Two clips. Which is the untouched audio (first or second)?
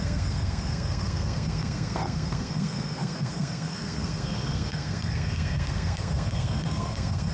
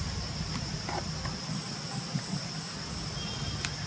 second